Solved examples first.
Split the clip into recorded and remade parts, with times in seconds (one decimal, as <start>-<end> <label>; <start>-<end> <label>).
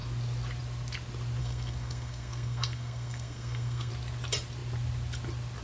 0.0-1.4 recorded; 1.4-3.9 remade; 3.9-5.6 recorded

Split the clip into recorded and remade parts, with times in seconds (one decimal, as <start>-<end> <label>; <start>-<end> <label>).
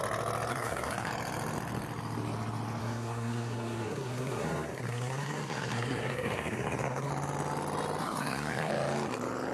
0.0-0.5 recorded; 0.5-1.1 remade; 1.1-2.8 recorded; 2.8-7.1 remade; 7.1-8.0 recorded; 8.0-8.7 remade; 8.7-9.5 recorded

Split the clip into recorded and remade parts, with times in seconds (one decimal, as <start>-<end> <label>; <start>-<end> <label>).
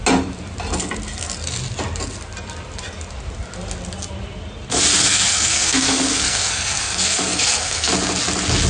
0.0-5.0 recorded; 5.0-7.9 remade; 7.9-8.7 recorded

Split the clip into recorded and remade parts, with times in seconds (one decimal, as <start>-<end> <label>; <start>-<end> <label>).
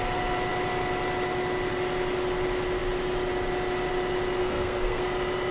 0.0-4.4 recorded; 4.4-5.0 remade; 5.0-5.5 recorded